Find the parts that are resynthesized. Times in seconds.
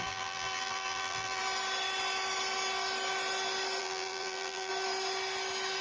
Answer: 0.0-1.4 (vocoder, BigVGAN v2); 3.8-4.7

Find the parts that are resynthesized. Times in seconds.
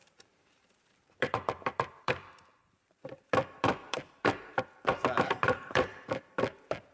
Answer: 0.0-6.9 (vocoder, BigVGAN v2)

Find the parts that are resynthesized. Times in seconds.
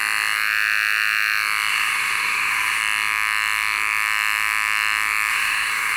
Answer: 1.7-2.8 (autoencoder, DAC-VAE); 5.3-6.0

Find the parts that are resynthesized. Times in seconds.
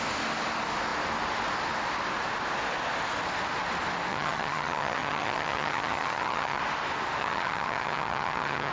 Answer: 4.1-6.6 (vocoder, HiFi-GAN); 7.2-8.7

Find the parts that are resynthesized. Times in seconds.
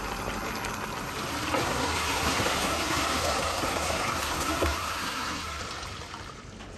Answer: 1.6-5.6 (codec, SNAC)